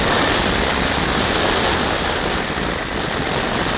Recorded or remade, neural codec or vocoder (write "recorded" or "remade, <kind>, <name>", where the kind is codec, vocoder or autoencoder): recorded